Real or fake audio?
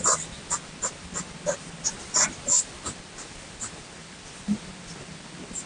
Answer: real